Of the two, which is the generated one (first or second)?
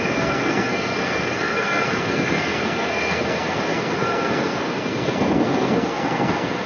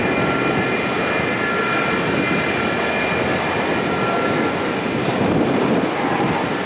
first